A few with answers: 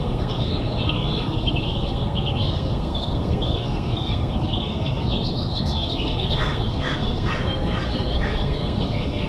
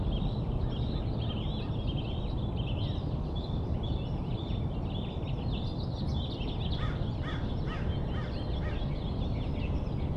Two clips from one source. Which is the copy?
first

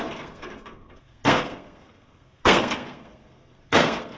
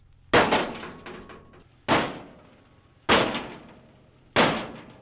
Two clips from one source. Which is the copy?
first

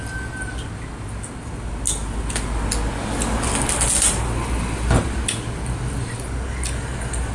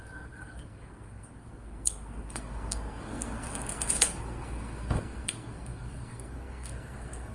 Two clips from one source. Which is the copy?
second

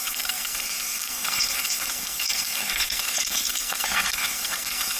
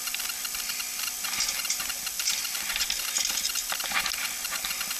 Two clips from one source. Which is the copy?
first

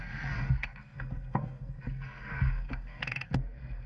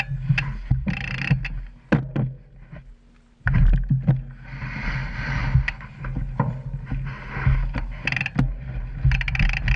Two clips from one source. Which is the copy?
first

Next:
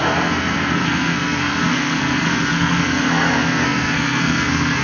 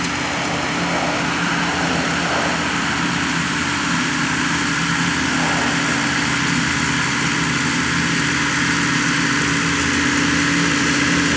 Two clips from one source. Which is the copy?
first